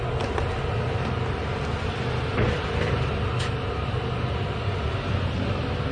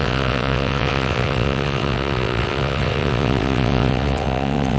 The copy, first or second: second